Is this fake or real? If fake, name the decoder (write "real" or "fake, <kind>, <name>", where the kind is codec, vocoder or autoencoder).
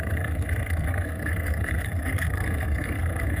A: fake, codec, SNAC